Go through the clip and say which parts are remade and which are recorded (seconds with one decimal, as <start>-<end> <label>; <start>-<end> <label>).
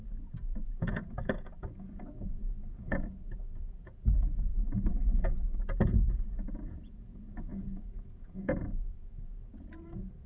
0.0-10.3 remade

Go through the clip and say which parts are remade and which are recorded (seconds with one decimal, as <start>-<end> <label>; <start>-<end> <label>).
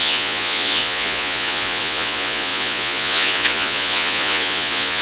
0.0-5.0 remade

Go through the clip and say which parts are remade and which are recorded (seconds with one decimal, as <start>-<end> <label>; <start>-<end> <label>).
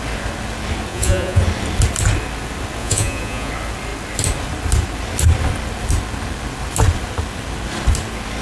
0.0-0.9 recorded; 0.9-1.4 remade; 1.4-2.8 recorded; 2.8-3.5 remade; 3.5-8.4 recorded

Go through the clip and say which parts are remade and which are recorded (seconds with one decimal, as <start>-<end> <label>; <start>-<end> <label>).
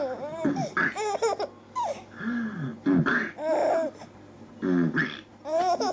0.0-5.9 recorded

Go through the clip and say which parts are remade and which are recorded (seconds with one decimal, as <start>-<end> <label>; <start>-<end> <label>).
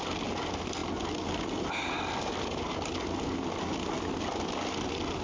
0.0-5.2 recorded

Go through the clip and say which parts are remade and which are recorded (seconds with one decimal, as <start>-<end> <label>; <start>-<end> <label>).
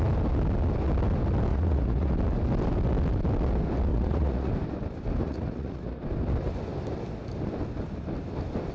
0.0-1.5 recorded; 1.5-2.1 remade; 2.1-3.9 recorded; 3.9-4.5 remade; 4.5-5.2 recorded; 5.2-6.0 remade; 6.0-8.7 recorded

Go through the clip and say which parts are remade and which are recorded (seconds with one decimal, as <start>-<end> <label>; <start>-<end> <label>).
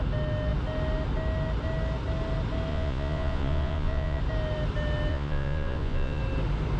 0.0-2.7 recorded; 2.7-4.2 remade; 4.2-5.1 recorded; 5.1-6.2 remade; 6.2-6.8 recorded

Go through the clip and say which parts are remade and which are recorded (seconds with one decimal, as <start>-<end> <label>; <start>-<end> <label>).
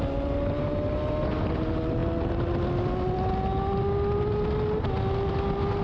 0.0-5.8 recorded